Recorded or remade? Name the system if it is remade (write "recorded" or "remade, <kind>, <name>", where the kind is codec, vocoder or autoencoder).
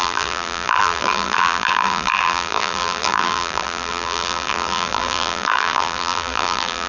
remade, vocoder, BigVGAN v2